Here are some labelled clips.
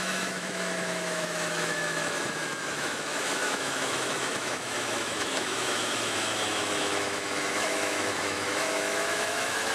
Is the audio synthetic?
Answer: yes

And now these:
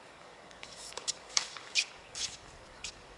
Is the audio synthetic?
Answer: yes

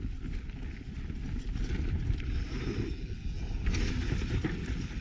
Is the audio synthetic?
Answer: no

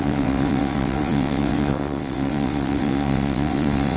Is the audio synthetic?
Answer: yes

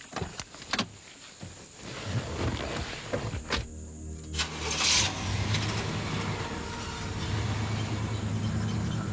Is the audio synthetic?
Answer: no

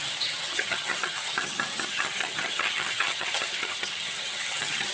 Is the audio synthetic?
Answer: yes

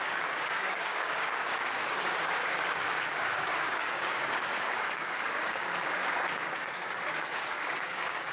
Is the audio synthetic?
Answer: yes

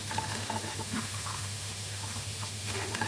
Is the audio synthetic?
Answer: yes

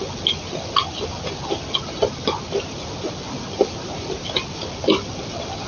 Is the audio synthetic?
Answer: no